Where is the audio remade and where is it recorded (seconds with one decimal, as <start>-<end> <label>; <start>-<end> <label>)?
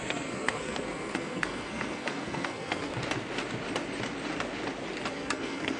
0.0-2.9 remade; 2.9-5.1 recorded; 5.1-5.8 remade